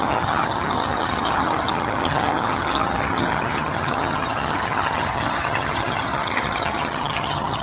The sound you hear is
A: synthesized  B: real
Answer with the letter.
A